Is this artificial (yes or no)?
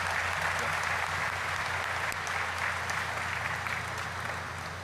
no